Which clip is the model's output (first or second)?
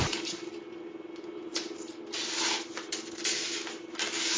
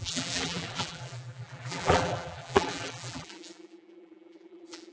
second